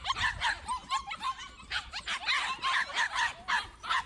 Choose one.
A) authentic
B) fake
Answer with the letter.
A